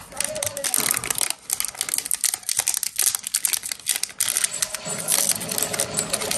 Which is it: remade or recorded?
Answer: recorded